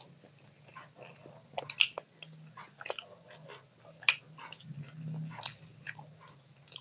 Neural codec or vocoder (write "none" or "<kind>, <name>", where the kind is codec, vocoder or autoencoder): none